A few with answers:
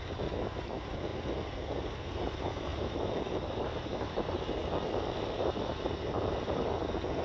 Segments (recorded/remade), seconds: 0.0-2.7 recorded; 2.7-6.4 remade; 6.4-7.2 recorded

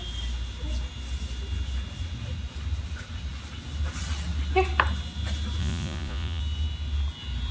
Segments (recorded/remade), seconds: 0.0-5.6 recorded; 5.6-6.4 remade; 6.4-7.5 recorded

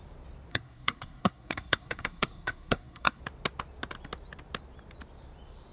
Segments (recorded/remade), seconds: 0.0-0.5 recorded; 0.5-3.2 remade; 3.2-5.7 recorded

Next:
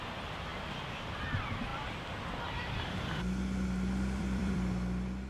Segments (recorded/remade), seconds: 0.0-0.5 recorded; 0.5-1.2 remade; 1.2-1.7 recorded; 1.7-5.3 remade